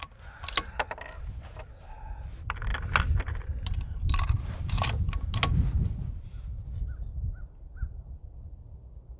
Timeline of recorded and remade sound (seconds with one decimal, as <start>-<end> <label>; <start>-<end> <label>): 0.0-9.2 recorded